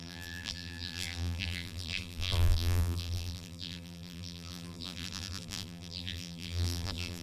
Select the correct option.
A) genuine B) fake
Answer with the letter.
B